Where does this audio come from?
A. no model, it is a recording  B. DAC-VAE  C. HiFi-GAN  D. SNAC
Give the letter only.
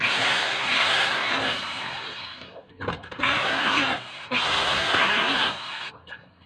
D